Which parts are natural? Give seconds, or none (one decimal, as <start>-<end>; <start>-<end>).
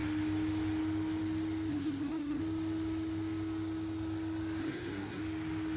0.0-1.7; 2.4-4.6; 5.2-5.8